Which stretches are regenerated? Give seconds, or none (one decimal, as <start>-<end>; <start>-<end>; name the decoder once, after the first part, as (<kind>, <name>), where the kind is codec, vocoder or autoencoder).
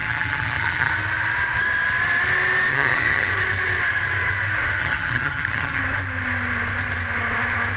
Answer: 0.0-0.9 (vocoder, HiFi-GAN); 2.7-3.3; 4.8-5.8